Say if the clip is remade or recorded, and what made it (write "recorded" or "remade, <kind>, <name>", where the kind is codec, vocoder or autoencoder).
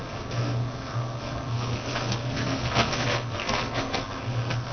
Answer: remade, codec, SNAC